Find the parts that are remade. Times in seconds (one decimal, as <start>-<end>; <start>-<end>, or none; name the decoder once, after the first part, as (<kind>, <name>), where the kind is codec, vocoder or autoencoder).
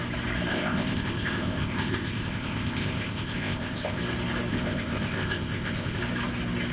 0.5-4.0 (codec, ZipCodec); 4.5-6.0